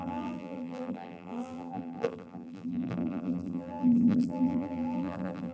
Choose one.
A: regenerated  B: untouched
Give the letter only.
A